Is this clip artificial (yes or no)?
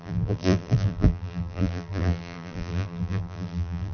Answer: yes